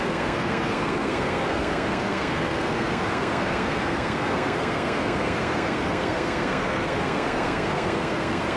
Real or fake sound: fake